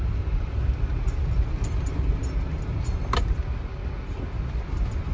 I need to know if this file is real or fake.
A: real